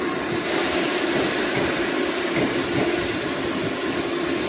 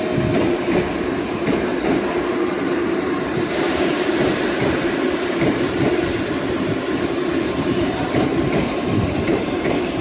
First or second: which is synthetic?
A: second